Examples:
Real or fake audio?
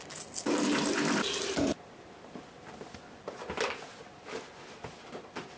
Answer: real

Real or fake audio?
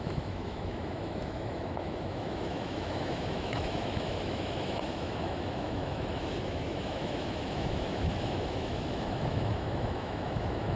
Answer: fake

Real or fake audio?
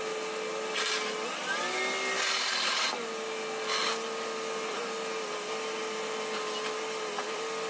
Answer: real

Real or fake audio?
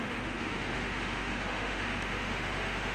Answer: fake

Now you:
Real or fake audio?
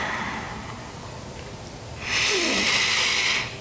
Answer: real